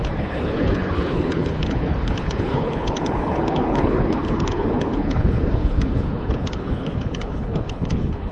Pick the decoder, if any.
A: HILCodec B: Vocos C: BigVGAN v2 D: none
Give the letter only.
A